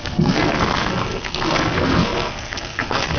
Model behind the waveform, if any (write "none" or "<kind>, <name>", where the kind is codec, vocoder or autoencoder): codec, SNAC